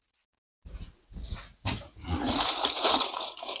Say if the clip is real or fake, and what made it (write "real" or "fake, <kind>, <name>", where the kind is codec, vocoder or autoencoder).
fake, vocoder, Vocos